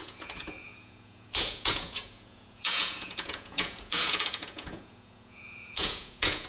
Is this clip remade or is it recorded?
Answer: remade